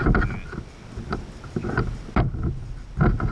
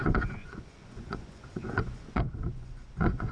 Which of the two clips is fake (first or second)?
second